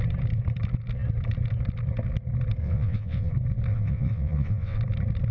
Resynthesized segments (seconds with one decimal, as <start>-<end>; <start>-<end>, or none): 2.6-3.3; 3.7-4.8